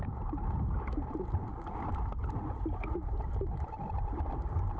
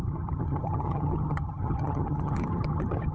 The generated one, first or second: second